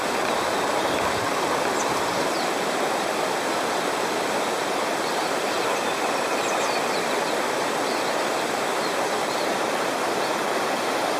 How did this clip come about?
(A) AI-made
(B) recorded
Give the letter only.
B